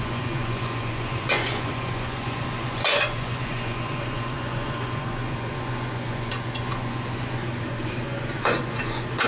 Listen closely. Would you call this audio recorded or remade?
remade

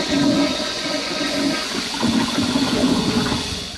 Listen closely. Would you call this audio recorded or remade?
remade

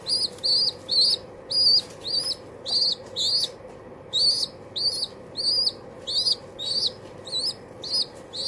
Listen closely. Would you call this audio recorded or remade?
recorded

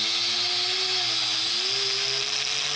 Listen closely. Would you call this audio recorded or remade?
recorded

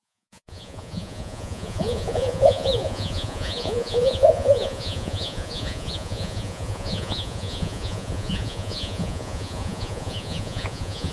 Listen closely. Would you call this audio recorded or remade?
remade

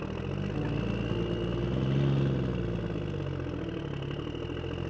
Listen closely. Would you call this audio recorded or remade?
recorded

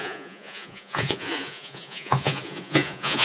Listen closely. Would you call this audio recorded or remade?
remade